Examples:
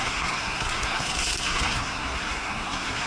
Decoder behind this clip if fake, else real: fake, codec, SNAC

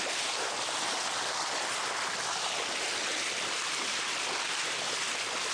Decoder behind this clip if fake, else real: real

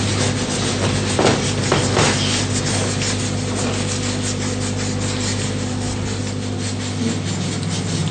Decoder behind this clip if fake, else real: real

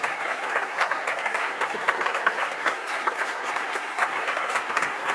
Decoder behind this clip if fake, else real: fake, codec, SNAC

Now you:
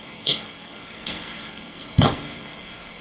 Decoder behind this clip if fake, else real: fake, codec, SNAC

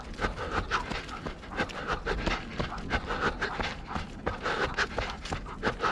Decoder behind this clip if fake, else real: real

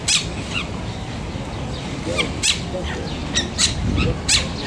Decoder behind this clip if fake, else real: real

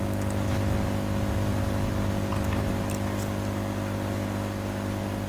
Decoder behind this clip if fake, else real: real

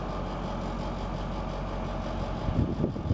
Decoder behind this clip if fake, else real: real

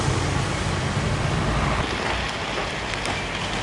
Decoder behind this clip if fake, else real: real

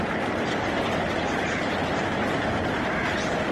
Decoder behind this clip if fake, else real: real